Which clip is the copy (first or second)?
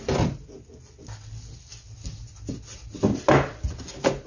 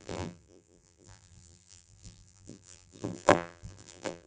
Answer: second